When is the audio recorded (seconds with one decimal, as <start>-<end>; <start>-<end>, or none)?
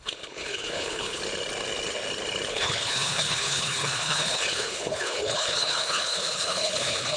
1.2-2.5